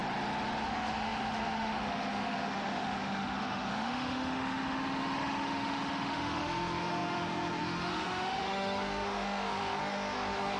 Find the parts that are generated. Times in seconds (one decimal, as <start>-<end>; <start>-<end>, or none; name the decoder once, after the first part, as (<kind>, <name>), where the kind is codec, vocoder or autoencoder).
0.6-10.6 (autoencoder, DAC-VAE)